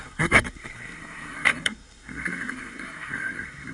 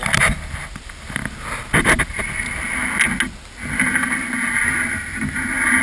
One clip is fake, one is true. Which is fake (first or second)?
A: first